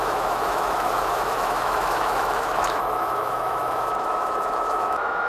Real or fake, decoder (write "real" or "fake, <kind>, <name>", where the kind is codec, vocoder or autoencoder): fake, autoencoder, DAC-VAE